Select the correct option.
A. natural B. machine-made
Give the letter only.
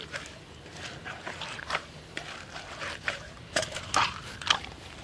B